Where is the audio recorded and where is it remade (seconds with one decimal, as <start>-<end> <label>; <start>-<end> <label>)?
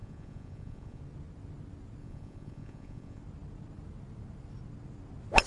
0.0-1.0 remade; 1.0-2.0 recorded; 2.0-3.2 remade; 3.2-5.5 recorded